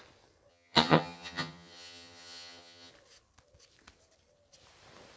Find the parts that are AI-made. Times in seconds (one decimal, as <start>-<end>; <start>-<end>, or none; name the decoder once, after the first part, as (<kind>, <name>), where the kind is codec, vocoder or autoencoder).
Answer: 0.5-2.9 (vocoder, HiFi-GAN)